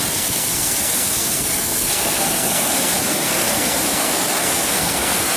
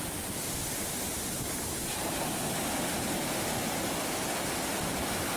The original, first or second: second